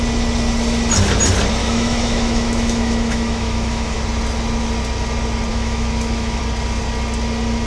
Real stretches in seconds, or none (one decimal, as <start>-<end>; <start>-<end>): 0.0-1.6; 4.0-5.5; 6.4-7.7